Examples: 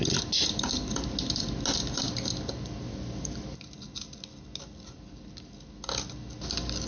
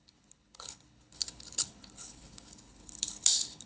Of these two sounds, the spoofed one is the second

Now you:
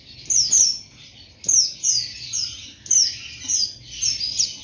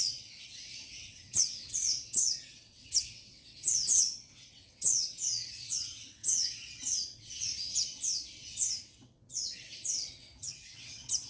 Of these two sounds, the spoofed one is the second